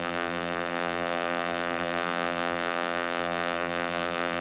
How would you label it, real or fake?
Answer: fake